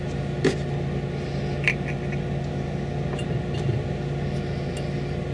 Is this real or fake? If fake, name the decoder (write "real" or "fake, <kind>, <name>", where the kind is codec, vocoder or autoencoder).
real